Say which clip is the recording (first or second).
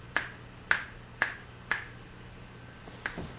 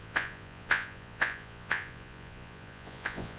first